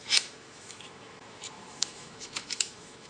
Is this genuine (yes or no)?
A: no